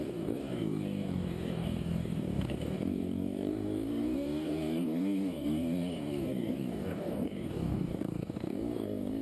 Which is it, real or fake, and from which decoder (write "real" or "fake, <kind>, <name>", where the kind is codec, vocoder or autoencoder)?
fake, codec, DAC